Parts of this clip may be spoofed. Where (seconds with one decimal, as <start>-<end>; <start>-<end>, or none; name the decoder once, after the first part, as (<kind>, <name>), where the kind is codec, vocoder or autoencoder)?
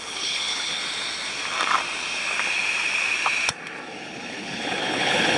0.0-0.8 (codec, HILCodec); 4.0-5.4